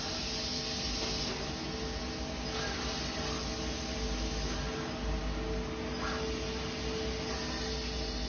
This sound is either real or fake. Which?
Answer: real